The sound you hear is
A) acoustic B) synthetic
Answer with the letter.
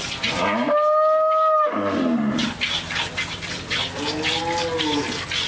A